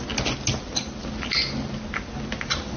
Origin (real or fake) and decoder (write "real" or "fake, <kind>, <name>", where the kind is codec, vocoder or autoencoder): real